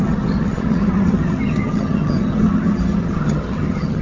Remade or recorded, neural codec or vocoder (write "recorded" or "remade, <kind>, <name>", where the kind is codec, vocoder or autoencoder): remade, vocoder, HiFi-GAN